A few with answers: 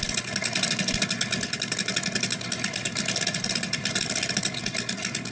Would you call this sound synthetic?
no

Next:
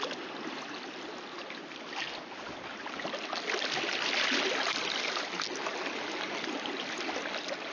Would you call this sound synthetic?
no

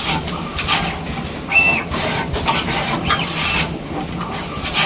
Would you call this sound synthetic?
no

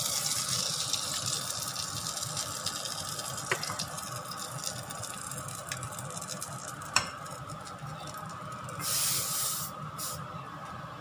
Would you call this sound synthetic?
no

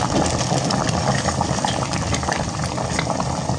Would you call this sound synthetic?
no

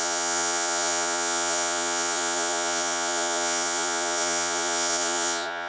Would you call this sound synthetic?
yes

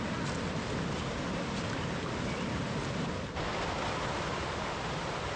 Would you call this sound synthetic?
no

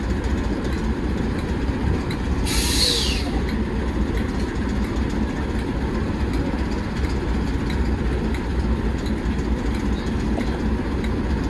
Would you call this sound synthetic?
no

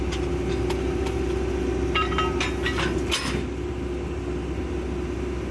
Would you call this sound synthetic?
no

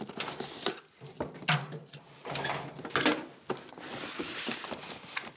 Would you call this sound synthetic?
no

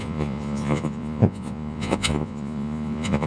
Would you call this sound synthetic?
yes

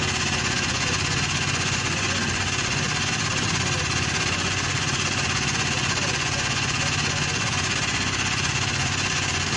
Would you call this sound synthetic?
yes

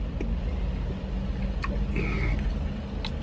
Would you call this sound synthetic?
no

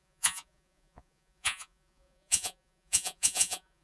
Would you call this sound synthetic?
yes